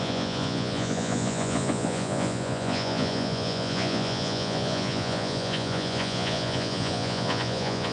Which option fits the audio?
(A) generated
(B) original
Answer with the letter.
A